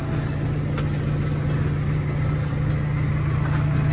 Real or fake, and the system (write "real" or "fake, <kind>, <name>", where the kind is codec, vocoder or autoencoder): real